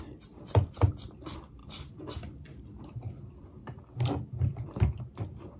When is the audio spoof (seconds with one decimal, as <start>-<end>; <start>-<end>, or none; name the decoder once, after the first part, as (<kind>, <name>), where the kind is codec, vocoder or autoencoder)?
0.0-5.6 (vocoder, BigVGAN v2)